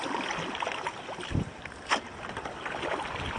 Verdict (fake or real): real